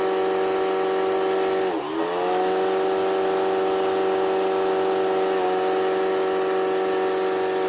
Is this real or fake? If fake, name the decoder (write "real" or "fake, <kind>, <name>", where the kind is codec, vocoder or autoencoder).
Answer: real